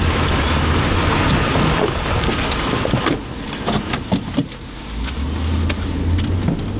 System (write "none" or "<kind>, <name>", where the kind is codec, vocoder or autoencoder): none